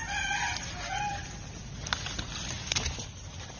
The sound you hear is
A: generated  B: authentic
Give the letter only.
B